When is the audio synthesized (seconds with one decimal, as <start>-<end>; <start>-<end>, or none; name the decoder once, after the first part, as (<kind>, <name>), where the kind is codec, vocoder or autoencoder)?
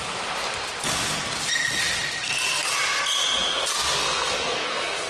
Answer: 4.0-5.1 (codec, SNAC)